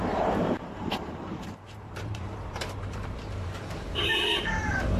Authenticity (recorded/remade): remade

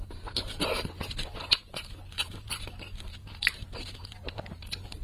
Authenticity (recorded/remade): remade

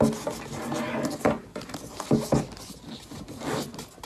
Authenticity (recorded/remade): recorded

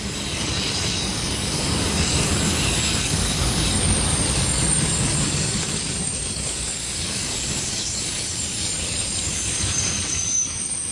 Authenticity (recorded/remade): remade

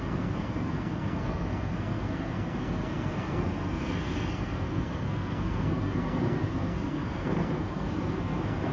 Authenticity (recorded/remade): remade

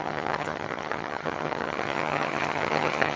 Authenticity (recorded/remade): remade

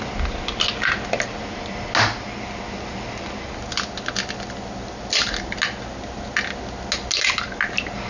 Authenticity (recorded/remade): recorded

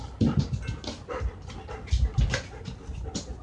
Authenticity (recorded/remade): recorded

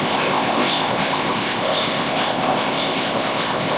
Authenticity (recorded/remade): remade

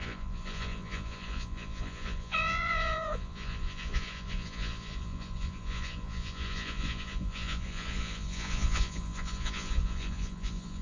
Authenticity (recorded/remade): remade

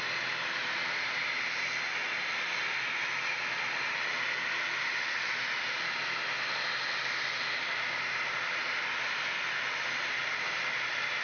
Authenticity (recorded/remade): recorded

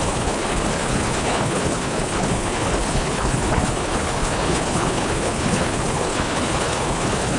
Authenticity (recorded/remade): remade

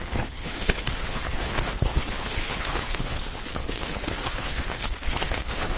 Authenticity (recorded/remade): remade